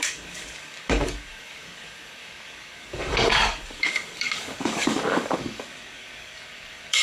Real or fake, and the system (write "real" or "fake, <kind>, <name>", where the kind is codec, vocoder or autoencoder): fake, codec, DAC